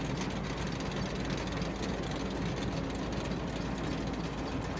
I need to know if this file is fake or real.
real